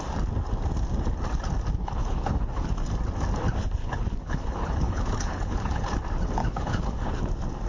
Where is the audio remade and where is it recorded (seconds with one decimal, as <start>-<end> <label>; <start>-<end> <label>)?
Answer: 0.0-1.8 recorded; 1.8-2.7 remade; 2.7-3.8 recorded; 3.8-5.9 remade; 5.9-6.4 recorded; 6.4-7.2 remade; 7.2-7.7 recorded